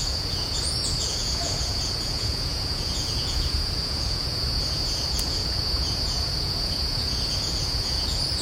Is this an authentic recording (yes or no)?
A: no